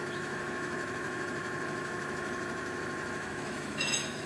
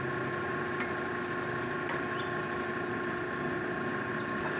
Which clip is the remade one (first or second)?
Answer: first